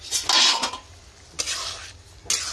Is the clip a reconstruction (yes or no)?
no